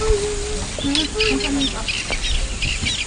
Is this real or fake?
real